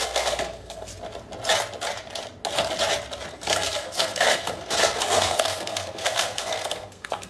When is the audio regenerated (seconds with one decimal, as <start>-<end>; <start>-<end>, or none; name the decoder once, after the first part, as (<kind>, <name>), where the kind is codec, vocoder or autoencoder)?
0.0-0.9 (codec, SNAC); 3.3-7.3